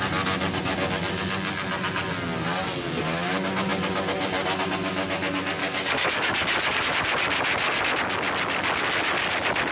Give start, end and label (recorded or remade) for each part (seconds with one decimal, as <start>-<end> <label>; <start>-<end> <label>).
0.0-5.6 recorded; 5.6-6.8 remade; 6.8-9.7 recorded

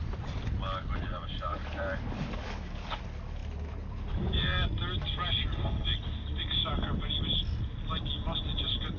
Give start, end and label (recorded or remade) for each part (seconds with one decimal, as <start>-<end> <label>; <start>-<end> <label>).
0.0-1.9 recorded; 1.9-3.0 remade; 3.0-9.0 recorded

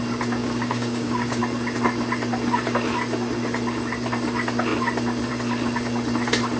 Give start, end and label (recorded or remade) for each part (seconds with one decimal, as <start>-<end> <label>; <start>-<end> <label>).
0.0-0.4 recorded; 0.4-1.4 remade; 1.4-6.6 recorded